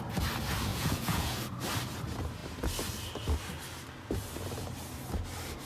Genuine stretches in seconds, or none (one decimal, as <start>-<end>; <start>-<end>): 0.0-0.7; 1.4-5.7